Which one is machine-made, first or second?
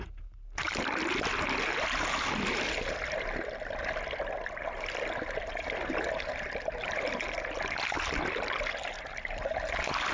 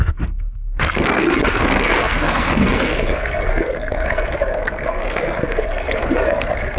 second